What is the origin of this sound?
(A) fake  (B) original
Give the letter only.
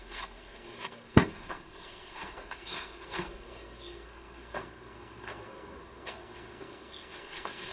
A